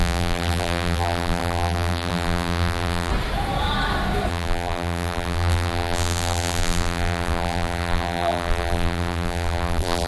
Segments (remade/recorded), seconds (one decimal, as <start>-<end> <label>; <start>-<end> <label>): 0.0-3.1 remade; 3.1-4.3 recorded; 4.3-10.1 remade